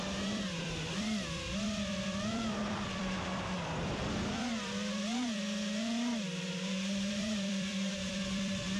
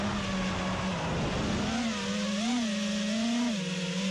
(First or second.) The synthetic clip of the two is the first